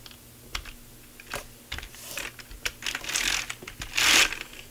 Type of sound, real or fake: real